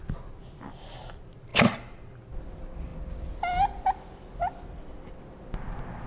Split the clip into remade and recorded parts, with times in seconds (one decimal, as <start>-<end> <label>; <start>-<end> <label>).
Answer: 0.0-6.1 recorded